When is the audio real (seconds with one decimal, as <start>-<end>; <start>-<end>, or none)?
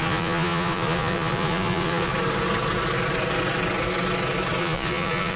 2.1-4.6